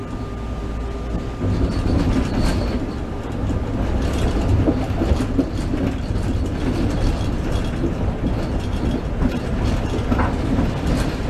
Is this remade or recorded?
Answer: recorded